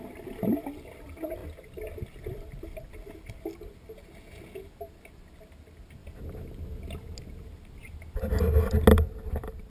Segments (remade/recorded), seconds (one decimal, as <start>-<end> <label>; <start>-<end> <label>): 0.0-8.9 recorded; 8.9-9.7 remade